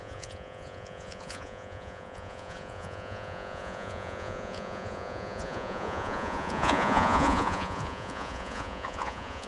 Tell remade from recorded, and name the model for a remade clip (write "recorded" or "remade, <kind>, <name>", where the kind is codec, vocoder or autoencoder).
remade, vocoder, Vocos